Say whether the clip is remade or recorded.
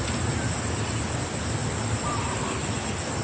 recorded